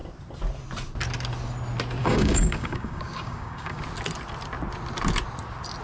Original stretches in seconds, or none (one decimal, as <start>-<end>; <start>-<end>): 0.0-2.0; 3.8-5.8